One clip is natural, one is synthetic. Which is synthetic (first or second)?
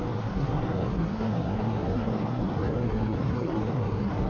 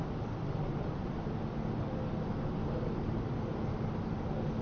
first